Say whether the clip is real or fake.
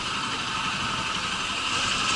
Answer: real